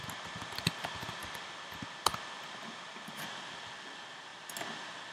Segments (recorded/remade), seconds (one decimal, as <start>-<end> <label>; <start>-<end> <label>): 0.0-5.1 recorded